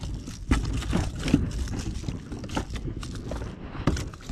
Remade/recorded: recorded